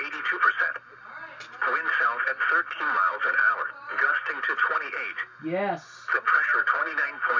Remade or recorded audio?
recorded